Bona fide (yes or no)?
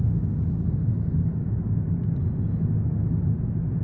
yes